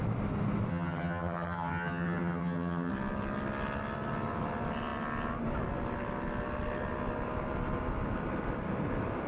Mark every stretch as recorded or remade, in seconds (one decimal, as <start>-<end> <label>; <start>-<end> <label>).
0.0-0.7 recorded; 0.7-2.9 remade; 2.9-9.3 recorded